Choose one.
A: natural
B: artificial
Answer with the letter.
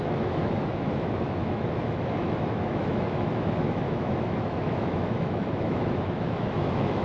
B